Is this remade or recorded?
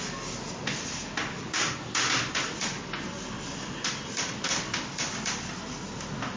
recorded